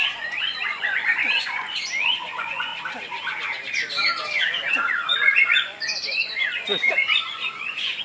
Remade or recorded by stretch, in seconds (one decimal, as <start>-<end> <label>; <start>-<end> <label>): 0.0-2.7 remade; 2.7-4.7 recorded; 4.7-8.0 remade